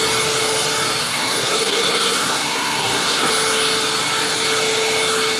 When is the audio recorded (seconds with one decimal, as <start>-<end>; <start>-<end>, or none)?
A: 0.0-1.0; 3.3-5.4